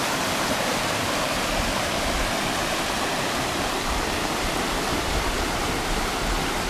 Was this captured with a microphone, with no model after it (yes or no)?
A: no